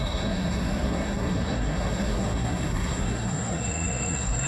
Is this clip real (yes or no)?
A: no